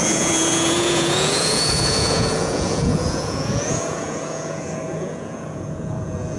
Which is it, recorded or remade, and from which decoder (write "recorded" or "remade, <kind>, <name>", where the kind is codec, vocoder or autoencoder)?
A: remade, vocoder, Vocos